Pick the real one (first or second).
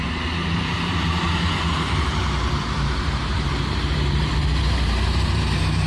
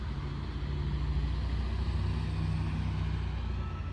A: second